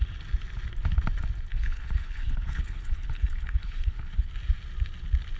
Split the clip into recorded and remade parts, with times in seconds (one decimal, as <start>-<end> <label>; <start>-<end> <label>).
0.0-1.5 recorded; 1.5-4.3 remade; 4.3-5.4 recorded